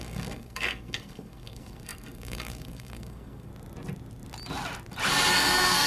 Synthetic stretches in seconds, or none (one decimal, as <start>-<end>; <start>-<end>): 0.0-3.5; 5.3-5.9